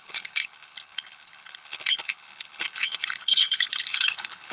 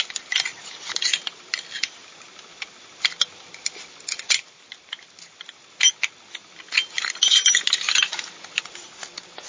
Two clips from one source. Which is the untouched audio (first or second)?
second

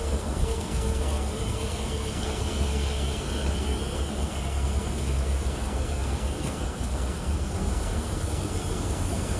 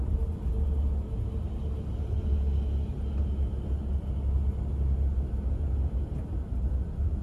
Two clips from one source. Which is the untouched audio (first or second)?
second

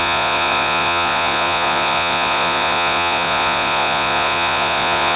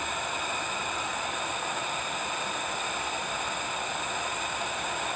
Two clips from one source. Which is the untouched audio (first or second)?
second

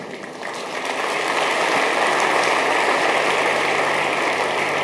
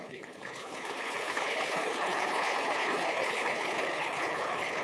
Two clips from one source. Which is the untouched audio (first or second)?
first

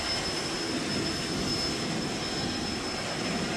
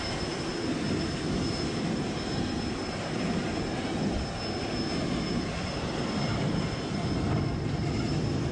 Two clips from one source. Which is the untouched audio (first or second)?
first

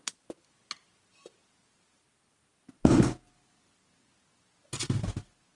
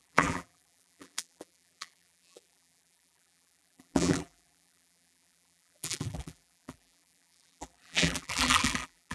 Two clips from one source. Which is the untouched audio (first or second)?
first